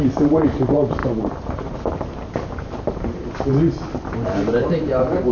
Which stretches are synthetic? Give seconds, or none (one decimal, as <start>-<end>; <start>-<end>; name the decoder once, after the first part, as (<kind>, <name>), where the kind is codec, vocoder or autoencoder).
0.0-3.5 (vocoder, BigVGAN v2); 4.6-5.3